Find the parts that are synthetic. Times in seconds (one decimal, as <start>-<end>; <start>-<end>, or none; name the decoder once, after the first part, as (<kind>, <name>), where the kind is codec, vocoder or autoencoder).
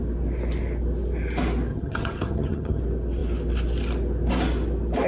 1.7-2.8 (vocoder, HiFi-GAN)